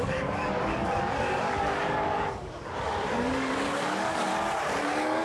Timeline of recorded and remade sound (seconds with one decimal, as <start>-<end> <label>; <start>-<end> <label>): 0.0-4.3 remade; 4.3-4.8 recorded; 4.8-5.2 remade